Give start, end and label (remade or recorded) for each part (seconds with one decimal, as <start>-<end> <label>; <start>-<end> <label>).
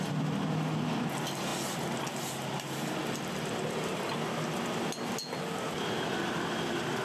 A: 0.0-7.0 recorded